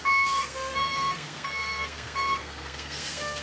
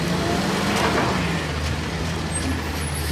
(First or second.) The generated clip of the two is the first